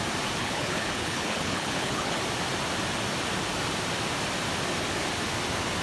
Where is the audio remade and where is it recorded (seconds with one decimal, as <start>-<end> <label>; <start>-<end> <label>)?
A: 0.0-0.4 recorded; 0.4-2.2 remade; 2.2-5.8 recorded